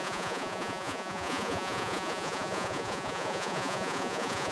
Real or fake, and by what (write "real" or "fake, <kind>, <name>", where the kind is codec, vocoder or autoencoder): fake, vocoder, Vocos